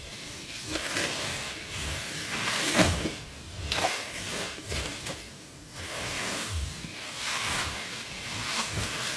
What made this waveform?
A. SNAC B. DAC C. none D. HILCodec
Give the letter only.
B